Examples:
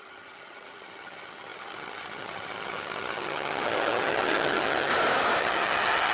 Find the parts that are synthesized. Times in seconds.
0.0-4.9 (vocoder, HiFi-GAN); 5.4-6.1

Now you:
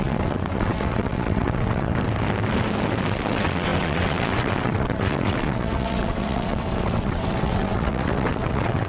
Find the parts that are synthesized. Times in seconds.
0.0-1.9 (vocoder, WaveNeXt); 3.1-8.9